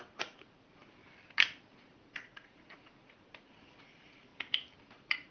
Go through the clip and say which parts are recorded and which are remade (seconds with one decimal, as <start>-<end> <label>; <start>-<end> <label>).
0.0-1.0 remade; 1.0-1.7 recorded; 1.7-4.3 remade; 4.3-4.8 recorded; 4.8-5.3 remade